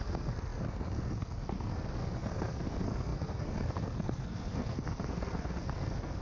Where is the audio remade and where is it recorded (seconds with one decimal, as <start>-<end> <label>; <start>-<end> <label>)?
0.0-6.2 remade